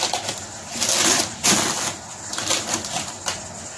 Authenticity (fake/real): real